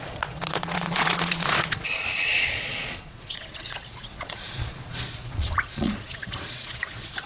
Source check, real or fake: fake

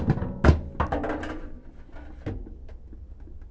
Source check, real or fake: real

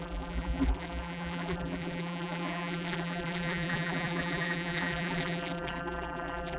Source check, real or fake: fake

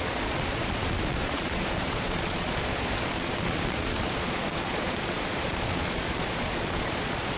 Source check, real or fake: fake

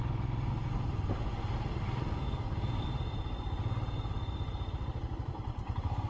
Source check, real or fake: real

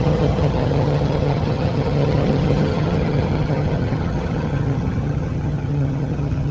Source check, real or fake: fake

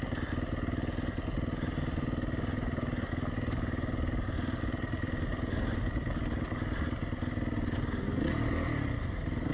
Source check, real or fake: real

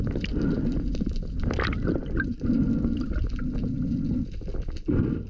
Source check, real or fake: real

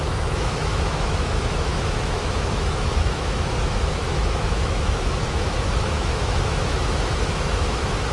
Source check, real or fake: fake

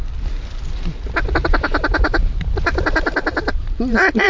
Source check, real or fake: fake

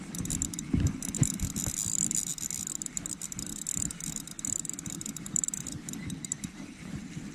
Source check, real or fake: real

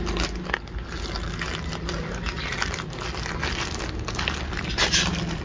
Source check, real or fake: real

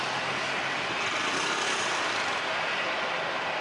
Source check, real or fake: real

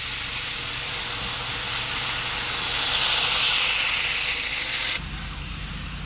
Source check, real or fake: real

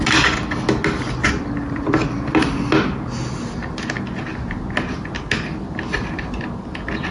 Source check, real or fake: real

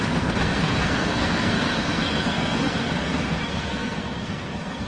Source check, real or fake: fake